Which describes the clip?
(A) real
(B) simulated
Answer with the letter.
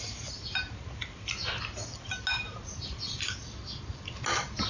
A